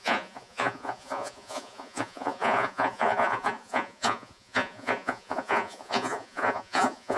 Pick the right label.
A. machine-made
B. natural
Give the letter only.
A